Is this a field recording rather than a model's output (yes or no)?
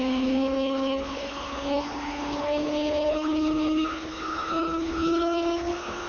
no